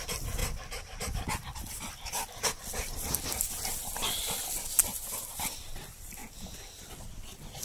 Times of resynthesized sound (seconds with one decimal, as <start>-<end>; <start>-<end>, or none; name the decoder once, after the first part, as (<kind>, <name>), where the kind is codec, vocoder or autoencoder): none